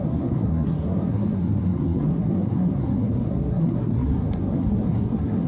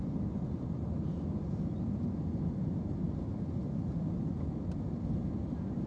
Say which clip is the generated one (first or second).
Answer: first